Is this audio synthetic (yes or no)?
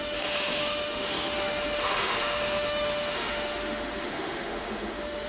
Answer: yes